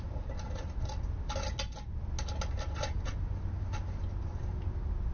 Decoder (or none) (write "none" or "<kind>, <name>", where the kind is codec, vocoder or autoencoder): none